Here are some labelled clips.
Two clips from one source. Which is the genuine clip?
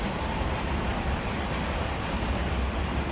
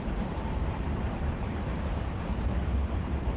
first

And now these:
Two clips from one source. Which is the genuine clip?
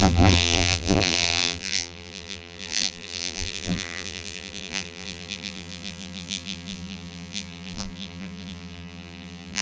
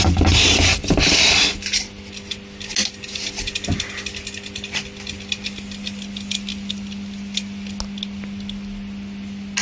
second